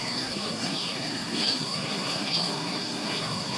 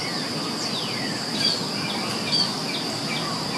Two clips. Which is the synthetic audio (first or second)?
first